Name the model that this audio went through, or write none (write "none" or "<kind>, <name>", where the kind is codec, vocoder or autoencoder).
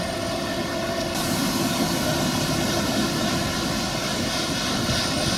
none